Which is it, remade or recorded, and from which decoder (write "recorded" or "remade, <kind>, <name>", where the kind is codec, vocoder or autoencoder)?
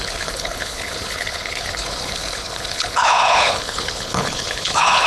remade, codec, HILCodec